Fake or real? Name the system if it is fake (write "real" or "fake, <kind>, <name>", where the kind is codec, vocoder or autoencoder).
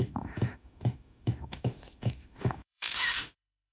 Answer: fake, autoencoder, DAC-VAE